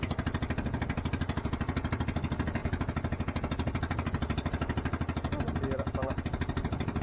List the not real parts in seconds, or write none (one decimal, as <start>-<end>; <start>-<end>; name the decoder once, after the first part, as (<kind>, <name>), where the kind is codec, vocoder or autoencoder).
none